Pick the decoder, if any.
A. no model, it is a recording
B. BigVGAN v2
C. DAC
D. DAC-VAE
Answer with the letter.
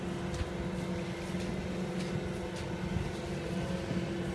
A